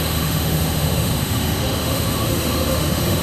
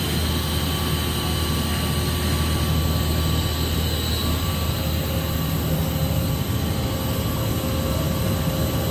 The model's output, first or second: first